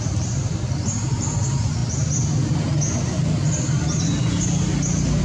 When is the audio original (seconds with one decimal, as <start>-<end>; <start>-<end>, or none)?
1.8-5.2